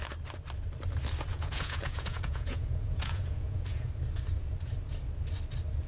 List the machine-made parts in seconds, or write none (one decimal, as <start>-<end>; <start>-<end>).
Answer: 1.3-3.9